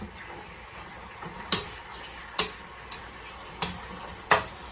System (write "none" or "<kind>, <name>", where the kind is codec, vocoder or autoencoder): none